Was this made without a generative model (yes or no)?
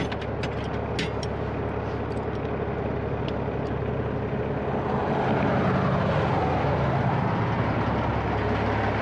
yes